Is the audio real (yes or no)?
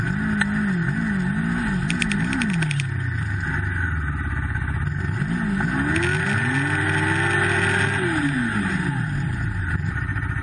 yes